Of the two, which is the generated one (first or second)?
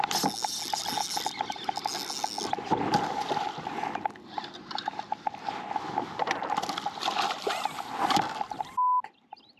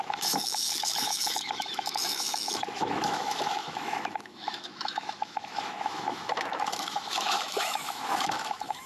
second